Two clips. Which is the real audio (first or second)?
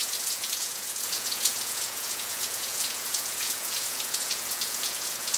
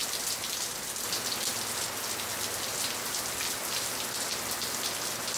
second